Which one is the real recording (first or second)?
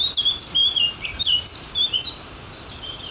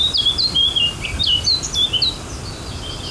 second